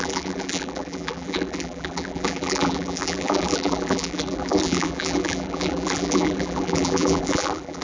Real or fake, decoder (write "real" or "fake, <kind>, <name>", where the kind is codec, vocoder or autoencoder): fake, vocoder, BigVGAN v2